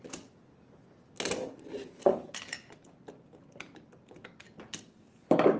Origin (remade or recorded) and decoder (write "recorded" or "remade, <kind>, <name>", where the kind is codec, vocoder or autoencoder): recorded